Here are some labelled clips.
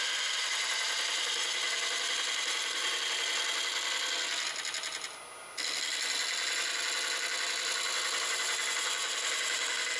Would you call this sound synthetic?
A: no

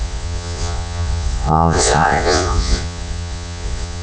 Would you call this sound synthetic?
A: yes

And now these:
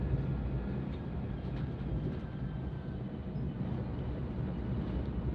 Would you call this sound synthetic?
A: no